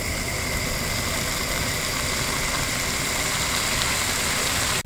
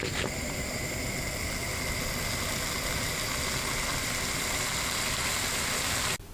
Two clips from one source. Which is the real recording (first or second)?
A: second